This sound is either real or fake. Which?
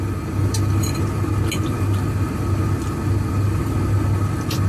real